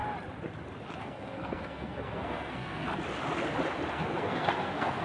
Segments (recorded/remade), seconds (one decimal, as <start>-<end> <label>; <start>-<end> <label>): 0.0-1.0 recorded; 1.0-2.9 remade; 2.9-3.9 recorded; 3.9-5.0 remade